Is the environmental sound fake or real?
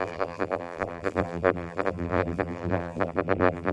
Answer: fake